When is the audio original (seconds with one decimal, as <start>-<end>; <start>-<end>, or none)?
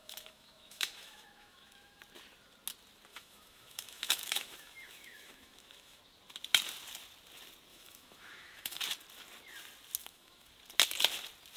2.0-3.1; 6.0-7.7; 8.8-10.0; 10.5-11.6